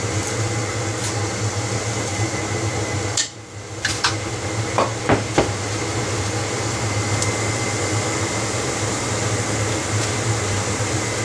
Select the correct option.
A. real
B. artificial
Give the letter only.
A